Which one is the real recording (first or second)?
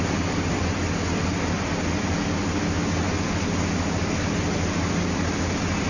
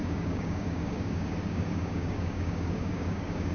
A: first